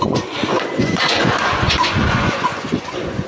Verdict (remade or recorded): remade